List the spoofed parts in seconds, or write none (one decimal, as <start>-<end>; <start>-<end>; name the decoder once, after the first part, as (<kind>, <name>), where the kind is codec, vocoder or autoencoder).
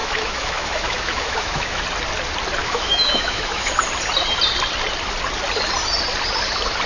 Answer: 0.0-1.8 (autoencoder, DAC-VAE); 2.6-3.7